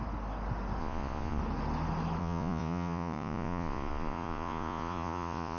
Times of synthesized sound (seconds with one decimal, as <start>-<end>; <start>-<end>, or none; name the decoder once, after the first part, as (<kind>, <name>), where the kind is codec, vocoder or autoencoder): 0.8-1.4 (vocoder, Vocos); 2.2-5.6